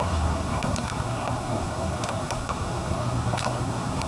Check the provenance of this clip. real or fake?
fake